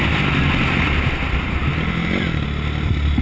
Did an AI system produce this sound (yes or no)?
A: no